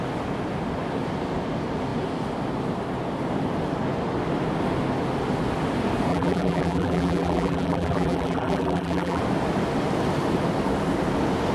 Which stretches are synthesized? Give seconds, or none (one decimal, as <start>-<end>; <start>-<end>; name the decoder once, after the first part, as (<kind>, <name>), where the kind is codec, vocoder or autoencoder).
6.1-9.2 (vocoder, BigVGAN v2)